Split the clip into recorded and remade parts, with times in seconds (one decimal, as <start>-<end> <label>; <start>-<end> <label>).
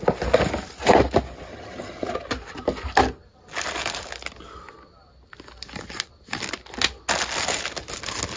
0.0-1.5 recorded; 1.5-2.1 remade; 2.1-8.4 recorded